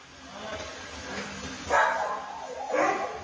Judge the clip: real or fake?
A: real